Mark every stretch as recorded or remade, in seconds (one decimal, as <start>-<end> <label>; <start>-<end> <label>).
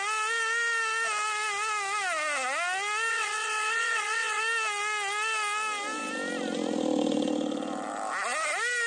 0.0-3.1 recorded; 3.1-4.4 remade; 4.4-8.9 recorded